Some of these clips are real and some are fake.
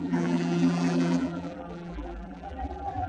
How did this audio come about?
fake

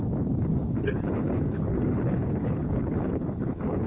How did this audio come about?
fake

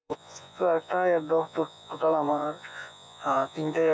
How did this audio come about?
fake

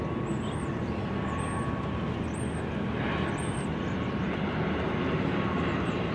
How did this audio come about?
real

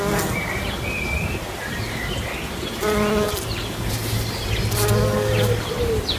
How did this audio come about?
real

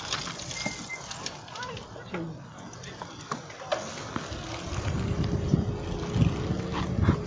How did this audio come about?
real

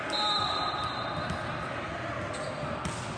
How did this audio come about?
real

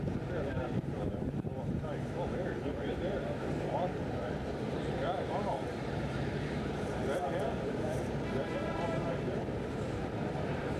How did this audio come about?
fake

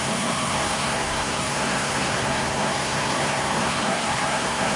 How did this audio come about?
fake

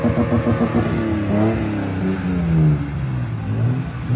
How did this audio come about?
real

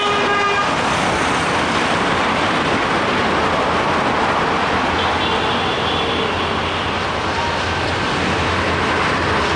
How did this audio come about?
real